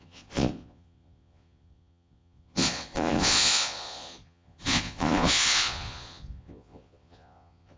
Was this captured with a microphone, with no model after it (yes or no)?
no